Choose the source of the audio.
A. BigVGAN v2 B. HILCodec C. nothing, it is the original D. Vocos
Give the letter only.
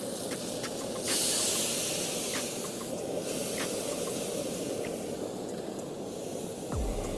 C